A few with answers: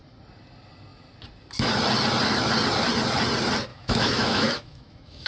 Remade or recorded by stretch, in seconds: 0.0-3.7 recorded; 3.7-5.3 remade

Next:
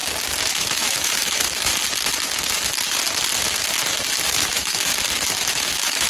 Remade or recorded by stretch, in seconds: 0.0-0.5 recorded; 0.5-1.7 remade; 1.7-4.3 recorded; 4.3-4.9 remade; 4.9-5.5 recorded; 5.5-6.1 remade

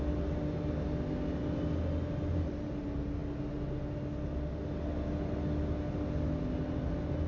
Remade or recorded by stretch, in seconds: 0.0-7.3 recorded

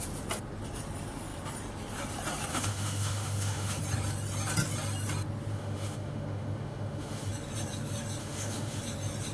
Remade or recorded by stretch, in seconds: 0.0-2.5 recorded; 2.5-3.8 remade; 3.8-5.5 recorded; 5.5-7.3 remade; 7.3-8.2 recorded; 8.2-8.8 remade; 8.8-9.3 recorded

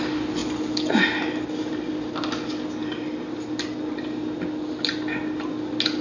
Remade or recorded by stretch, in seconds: 0.0-6.0 recorded